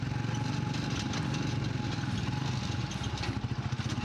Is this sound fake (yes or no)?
no